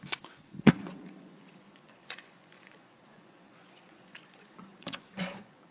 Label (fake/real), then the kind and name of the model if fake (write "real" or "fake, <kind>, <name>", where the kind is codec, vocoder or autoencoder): fake, vocoder, Vocos